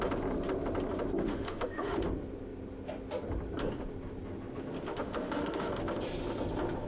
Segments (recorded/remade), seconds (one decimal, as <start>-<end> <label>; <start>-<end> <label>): 0.0-1.2 recorded; 1.2-2.0 remade; 2.0-4.9 recorded; 4.9-5.7 remade; 5.7-6.9 recorded